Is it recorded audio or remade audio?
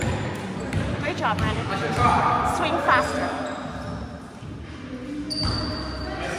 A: recorded